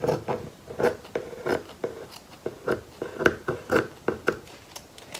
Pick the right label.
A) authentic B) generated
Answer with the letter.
A